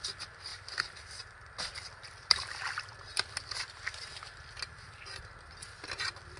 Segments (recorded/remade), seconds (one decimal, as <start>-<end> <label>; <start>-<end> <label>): 0.0-6.4 recorded